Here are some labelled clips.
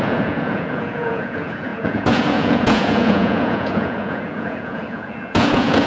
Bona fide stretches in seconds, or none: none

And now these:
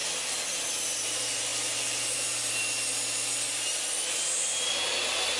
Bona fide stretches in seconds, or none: 0.0-5.4

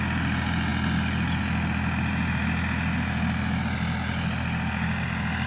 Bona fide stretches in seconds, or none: 0.0-5.5

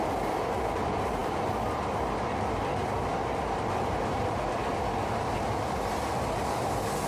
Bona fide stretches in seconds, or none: 0.0-7.1

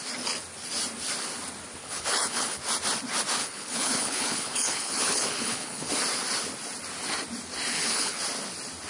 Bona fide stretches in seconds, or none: 0.0-1.8; 2.6-3.4; 5.9-7.7; 8.2-8.9

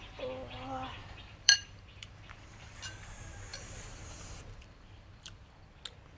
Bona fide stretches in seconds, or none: 0.0-1.0; 2.8-3.5; 5.4-6.2

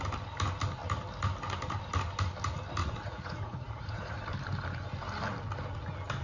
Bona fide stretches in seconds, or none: 0.0-2.8; 4.2-6.2